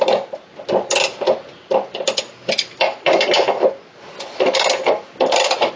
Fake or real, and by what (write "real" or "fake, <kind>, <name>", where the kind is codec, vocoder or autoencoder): real